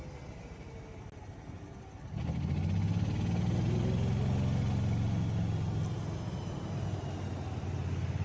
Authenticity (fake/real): real